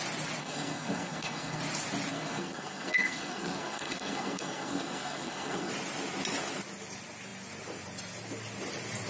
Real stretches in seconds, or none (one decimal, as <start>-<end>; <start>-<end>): 0.0-0.4; 1.6-2.1; 5.7-9.1